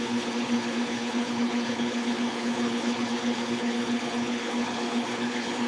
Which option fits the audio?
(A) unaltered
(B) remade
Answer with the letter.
B